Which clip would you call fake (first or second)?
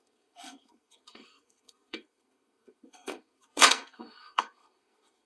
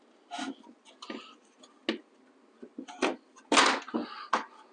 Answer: first